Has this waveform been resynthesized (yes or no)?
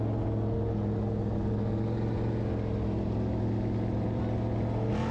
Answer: no